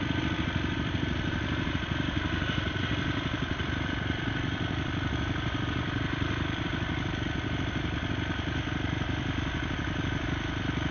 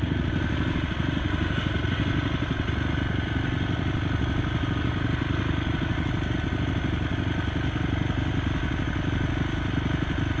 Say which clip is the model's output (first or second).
first